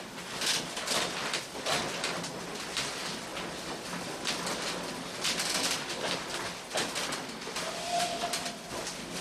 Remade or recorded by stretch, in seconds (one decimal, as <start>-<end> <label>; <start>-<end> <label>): 0.0-9.2 recorded